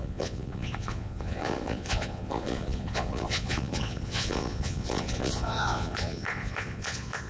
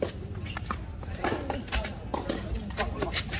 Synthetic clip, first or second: first